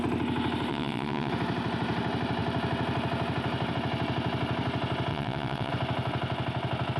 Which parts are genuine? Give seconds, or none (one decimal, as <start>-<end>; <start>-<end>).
0.0-0.7; 1.3-5.1; 5.7-7.0